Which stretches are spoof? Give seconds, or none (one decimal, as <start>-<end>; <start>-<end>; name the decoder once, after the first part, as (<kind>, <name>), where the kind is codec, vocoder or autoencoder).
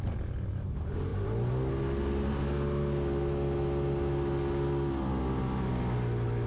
1.1-1.7 (vocoder, BigVGAN v2)